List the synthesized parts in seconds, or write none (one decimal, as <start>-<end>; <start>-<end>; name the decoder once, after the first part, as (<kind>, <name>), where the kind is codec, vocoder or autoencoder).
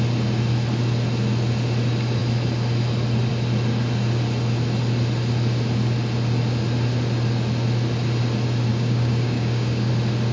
8.7-9.9 (codec, DAC)